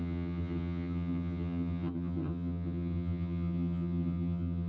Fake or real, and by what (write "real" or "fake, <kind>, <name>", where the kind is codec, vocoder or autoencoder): fake, vocoder, HiFi-GAN